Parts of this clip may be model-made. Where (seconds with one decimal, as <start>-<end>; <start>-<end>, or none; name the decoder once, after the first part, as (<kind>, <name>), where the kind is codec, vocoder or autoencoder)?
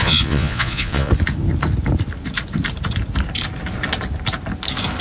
0.0-1.1 (vocoder, Vocos)